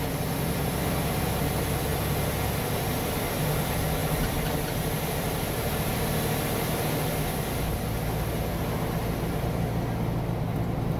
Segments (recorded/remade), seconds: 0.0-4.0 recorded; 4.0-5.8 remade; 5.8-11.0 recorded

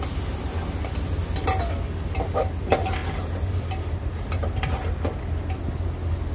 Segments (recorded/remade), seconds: 0.0-6.3 recorded

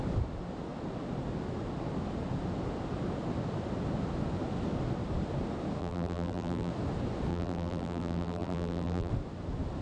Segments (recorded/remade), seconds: 0.0-5.8 recorded; 5.8-6.7 remade; 6.7-7.3 recorded; 7.3-9.1 remade; 9.1-9.8 recorded